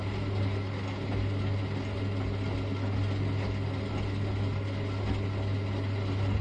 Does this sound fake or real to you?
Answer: real